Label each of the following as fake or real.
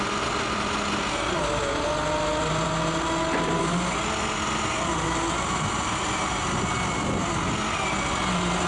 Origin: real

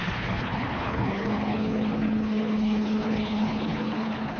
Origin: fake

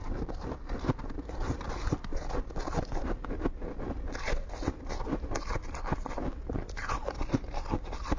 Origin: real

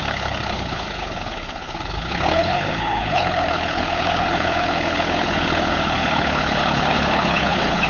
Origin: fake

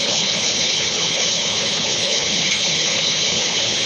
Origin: fake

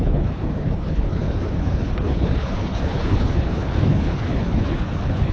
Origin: fake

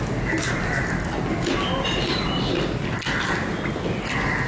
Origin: real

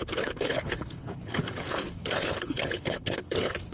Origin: fake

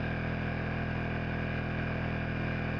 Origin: real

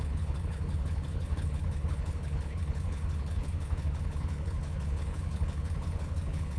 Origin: fake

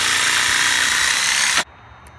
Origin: real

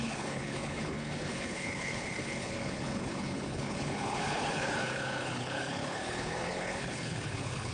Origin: fake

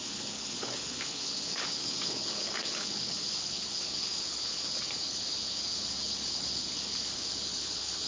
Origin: fake